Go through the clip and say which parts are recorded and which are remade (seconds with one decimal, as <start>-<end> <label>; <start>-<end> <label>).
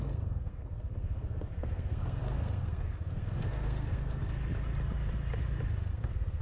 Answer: 0.0-4.2 remade; 4.2-5.9 recorded; 5.9-6.4 remade